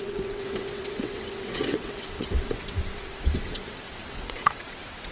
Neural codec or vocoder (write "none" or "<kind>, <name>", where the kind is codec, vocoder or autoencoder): vocoder, WaveNeXt